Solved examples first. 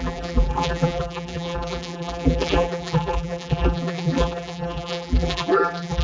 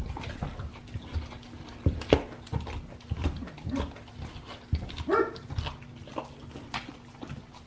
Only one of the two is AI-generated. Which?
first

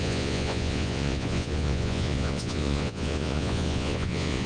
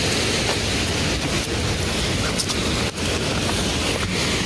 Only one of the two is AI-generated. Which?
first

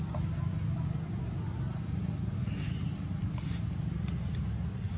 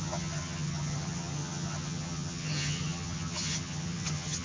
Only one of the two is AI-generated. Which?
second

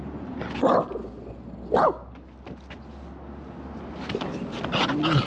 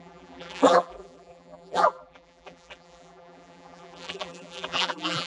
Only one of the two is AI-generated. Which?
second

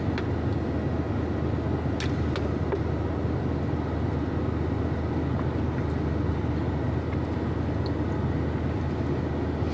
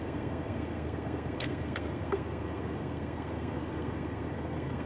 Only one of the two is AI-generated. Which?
second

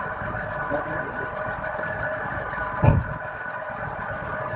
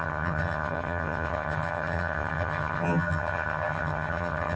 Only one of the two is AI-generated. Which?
second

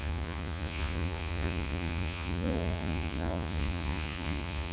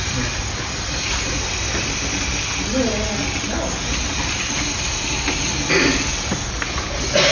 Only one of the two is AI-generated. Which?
first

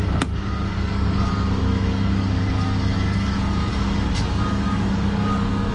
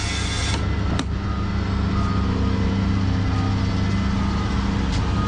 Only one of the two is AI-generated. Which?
first